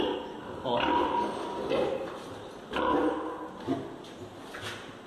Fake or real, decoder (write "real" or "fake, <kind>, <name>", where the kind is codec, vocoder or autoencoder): real